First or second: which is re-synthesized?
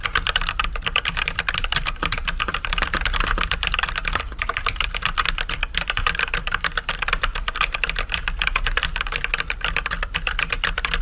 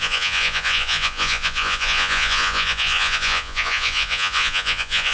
second